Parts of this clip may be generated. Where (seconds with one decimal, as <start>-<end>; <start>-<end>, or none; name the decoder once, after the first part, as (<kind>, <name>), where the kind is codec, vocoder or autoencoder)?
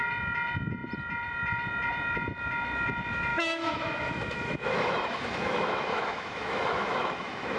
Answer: 3.3-7.6 (autoencoder, DAC-VAE)